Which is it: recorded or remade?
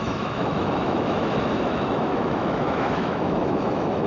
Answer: remade